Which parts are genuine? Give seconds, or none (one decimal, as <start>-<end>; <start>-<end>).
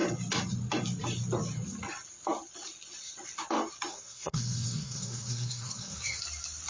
0.0-3.9; 6.2-6.7